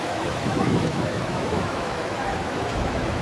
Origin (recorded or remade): remade